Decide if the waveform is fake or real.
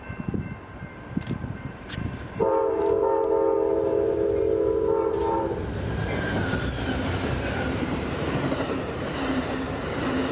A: fake